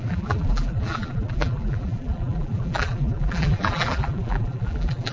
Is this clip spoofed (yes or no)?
yes